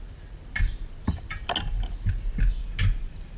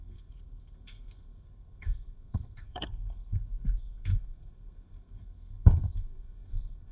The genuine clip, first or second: first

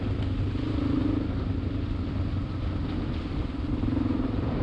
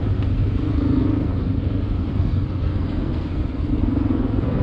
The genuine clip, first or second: first